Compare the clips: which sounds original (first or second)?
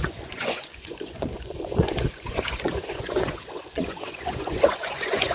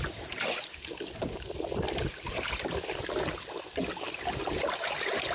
second